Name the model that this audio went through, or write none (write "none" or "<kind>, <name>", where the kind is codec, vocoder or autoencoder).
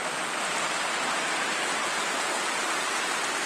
none